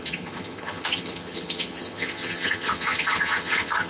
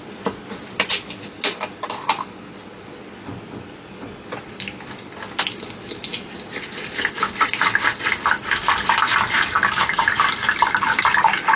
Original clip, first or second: second